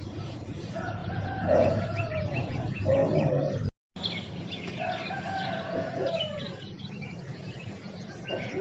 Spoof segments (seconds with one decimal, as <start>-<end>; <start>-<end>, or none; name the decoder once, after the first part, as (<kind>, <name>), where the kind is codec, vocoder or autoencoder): 0.0-3.0 (vocoder, Vocos); 5.5-8.6